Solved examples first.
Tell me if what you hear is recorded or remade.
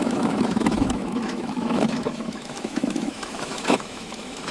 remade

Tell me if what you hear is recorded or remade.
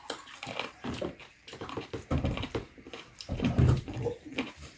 remade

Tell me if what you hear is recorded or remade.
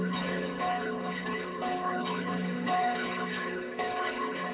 remade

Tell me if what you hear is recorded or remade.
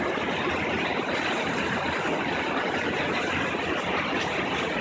recorded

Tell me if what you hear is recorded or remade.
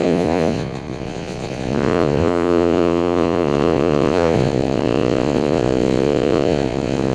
remade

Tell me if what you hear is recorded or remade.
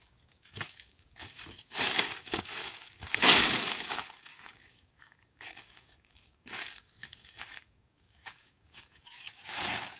remade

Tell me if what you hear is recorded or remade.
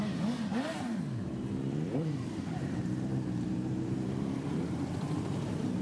remade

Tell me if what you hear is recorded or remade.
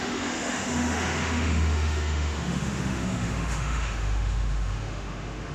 remade